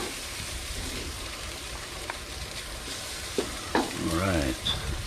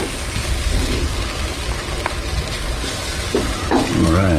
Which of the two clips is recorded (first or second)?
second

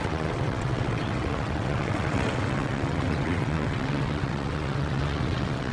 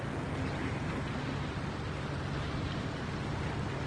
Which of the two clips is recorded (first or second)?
second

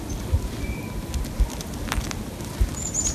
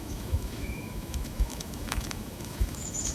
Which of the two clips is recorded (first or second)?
first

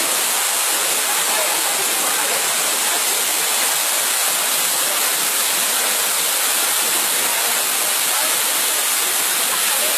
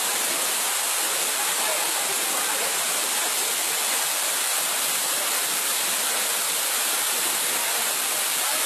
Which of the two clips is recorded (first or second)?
first